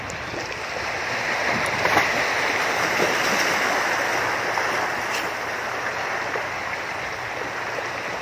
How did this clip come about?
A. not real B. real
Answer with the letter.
B